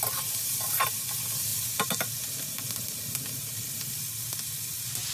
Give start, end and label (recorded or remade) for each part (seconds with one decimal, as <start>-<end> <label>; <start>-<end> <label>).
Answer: 0.0-5.1 recorded